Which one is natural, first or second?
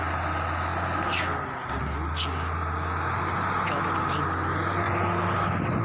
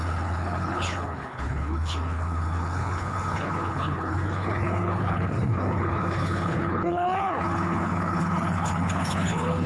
first